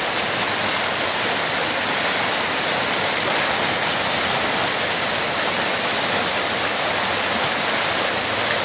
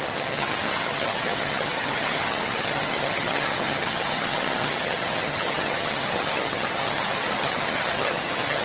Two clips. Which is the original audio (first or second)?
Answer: first